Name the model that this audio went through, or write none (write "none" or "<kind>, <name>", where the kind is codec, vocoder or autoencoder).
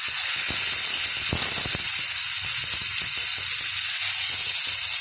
none